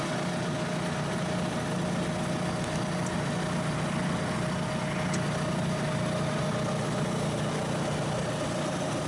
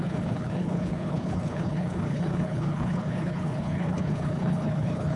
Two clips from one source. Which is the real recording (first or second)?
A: first